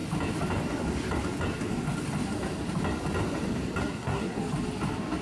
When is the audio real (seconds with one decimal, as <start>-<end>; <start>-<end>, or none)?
0.0-3.8; 4.4-5.2